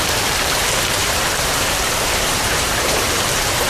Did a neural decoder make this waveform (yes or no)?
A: yes